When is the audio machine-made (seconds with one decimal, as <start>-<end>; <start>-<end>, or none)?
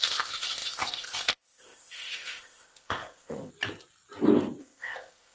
0.0-3.5; 4.6-5.3